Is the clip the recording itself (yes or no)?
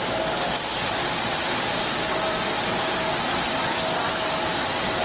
yes